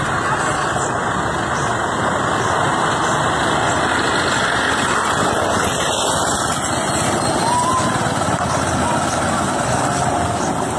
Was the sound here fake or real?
real